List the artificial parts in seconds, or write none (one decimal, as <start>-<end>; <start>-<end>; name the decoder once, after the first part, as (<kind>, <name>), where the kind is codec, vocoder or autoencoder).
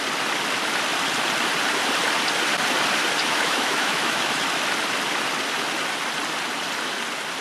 3.2-4.4 (autoencoder, DAC-VAE)